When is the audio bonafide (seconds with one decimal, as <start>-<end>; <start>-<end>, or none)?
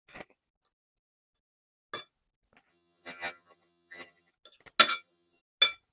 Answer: 0.0-2.7; 4.3-4.9; 5.4-5.9